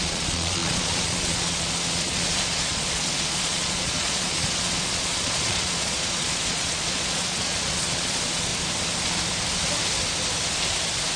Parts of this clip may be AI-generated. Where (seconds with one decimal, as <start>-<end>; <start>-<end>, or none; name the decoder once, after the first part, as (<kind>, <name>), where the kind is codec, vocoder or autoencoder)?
0.0-8.5 (vocoder, Vocos)